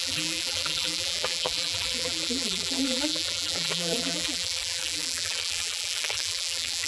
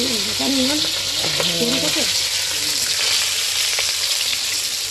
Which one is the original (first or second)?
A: second